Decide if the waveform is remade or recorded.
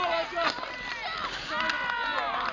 recorded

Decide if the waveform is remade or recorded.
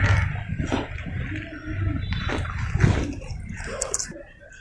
recorded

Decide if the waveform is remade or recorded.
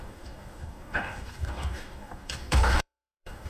remade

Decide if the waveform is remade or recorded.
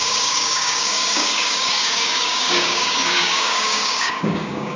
remade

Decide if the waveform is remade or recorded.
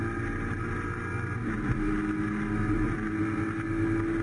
recorded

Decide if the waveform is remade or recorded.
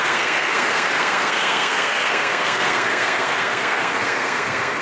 remade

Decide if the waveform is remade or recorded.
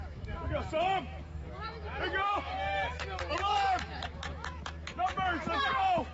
remade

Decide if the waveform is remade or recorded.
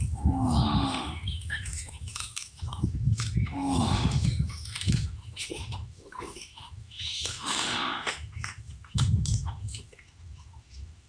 remade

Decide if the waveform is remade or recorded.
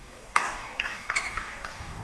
remade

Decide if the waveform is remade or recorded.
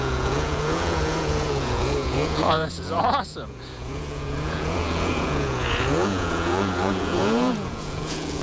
remade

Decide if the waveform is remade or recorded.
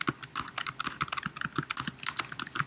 recorded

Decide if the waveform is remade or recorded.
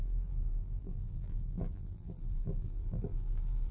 remade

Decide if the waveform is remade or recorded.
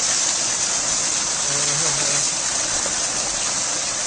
recorded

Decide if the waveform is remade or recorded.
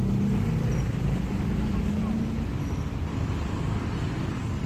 recorded